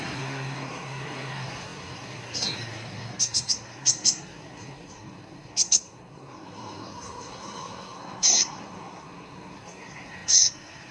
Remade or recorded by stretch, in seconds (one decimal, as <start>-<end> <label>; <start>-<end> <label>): 0.0-10.9 remade